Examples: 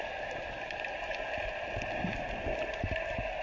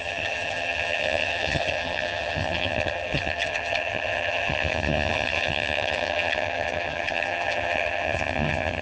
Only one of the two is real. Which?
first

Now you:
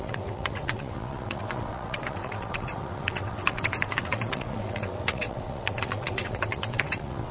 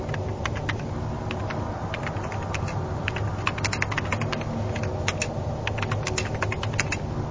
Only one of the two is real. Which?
second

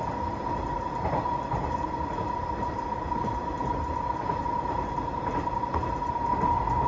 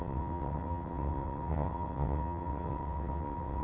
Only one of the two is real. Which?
first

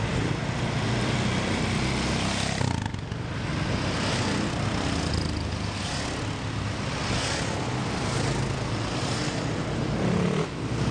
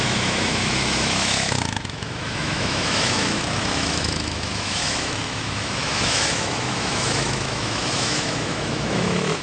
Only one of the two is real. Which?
first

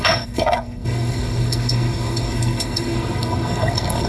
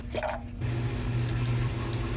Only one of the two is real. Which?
second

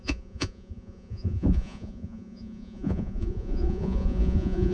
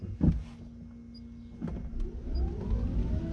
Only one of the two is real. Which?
second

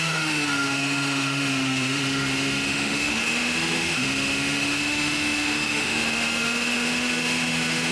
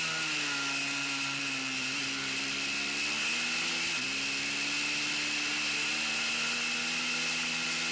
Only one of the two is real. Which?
second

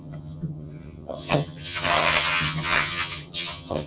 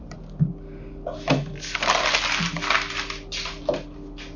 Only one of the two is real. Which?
second